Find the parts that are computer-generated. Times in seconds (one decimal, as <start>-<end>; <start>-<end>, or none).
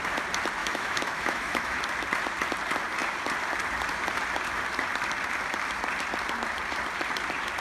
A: 0.6-1.8